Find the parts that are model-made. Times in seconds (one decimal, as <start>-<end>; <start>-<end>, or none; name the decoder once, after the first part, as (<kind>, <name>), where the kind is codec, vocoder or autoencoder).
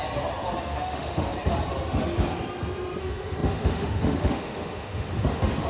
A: 0.6-1.3 (autoencoder, DAC-VAE); 3.0-5.7